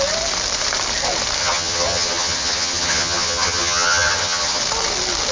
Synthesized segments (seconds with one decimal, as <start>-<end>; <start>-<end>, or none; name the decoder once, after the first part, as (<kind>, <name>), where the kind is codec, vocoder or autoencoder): 1.4-4.6 (vocoder, HiFi-GAN)